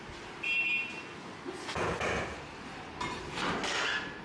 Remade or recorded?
recorded